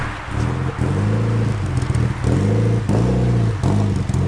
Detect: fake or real real